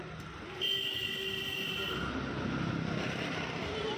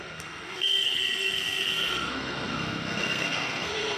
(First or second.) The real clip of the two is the first